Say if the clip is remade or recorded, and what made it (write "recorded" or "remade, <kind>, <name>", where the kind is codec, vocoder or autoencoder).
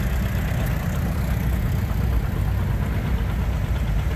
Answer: recorded